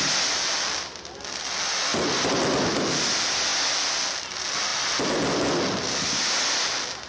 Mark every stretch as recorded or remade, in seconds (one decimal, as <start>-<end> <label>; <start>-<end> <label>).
0.0-7.1 recorded